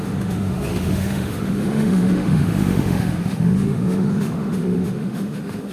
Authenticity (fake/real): fake